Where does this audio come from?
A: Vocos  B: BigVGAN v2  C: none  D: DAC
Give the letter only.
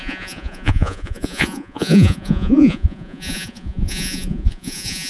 A